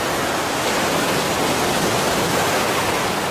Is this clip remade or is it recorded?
recorded